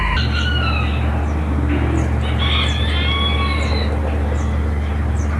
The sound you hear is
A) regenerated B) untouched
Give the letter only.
B